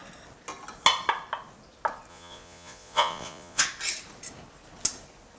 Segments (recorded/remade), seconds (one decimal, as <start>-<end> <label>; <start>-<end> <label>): 0.0-2.1 recorded; 2.1-3.6 remade; 3.6-5.4 recorded